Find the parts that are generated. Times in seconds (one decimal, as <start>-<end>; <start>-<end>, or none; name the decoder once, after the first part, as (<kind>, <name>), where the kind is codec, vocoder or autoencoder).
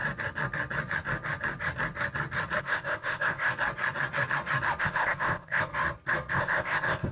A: 2.6-3.5 (codec, ZipCodec); 4.8-5.7; 6.3-7.1